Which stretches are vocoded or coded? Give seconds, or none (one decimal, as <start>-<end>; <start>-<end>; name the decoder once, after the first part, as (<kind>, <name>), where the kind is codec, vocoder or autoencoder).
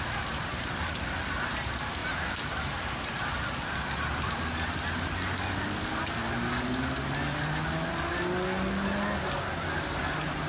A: none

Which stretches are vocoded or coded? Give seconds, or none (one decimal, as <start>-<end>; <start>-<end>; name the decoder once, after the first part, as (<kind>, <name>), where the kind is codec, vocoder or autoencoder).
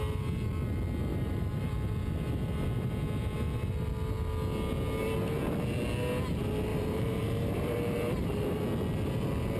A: 1.1-1.7 (vocoder, BigVGAN v2); 6.7-8.6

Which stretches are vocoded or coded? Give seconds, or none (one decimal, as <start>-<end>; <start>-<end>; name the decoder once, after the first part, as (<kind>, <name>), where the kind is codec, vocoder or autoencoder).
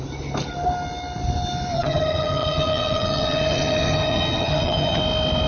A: 1.7-5.0 (vocoder, HiFi-GAN)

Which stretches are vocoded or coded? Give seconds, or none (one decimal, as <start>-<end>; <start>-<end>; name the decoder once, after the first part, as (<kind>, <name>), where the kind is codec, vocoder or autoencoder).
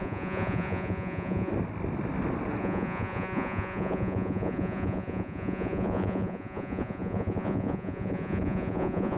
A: 0.0-1.5 (vocoder, Vocos); 2.6-9.2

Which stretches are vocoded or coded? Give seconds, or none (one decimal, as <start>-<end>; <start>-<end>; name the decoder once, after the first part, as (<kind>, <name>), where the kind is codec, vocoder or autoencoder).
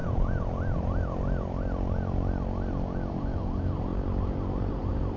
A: 3.1-3.9 (vocoder, BigVGAN v2); 4.7-5.2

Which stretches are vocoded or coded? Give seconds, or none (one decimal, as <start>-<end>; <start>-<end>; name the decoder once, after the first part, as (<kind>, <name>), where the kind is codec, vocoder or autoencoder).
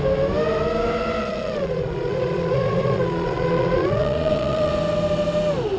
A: 1.2-4.7 (vocoder, Vocos)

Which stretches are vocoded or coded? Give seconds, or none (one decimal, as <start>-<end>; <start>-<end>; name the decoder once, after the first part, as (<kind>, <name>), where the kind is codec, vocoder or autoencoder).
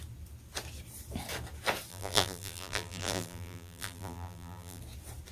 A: 1.9-4.8 (vocoder, BigVGAN v2)